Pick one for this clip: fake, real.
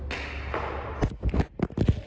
real